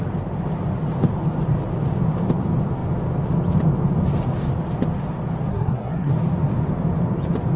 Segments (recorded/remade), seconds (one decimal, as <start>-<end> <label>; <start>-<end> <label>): 0.0-5.5 recorded; 5.5-6.1 remade; 6.1-7.6 recorded